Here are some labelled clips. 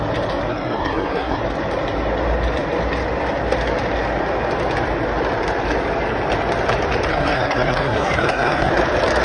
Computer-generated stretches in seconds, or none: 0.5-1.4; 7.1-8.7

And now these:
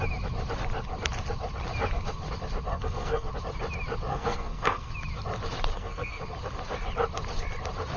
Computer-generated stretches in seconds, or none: 2.7-3.3; 4.1-4.9; 5.7-6.2

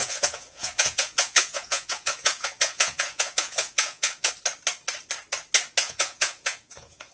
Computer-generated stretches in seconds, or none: 0.0-4.3; 5.8-7.1